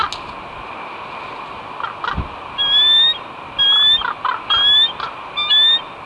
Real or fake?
real